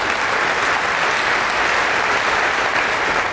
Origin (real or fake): real